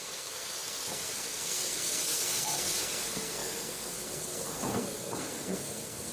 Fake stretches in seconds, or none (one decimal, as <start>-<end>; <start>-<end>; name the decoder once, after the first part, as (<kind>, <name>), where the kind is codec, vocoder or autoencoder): 0.0-6.1 (codec, SNAC)